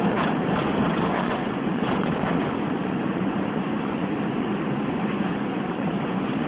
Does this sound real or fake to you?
fake